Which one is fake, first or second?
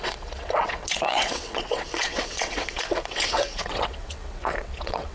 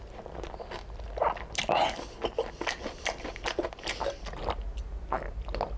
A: first